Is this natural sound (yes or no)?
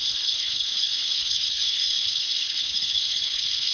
no